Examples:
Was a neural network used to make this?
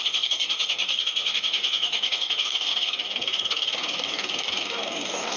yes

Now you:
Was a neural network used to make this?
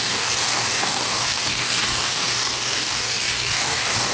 yes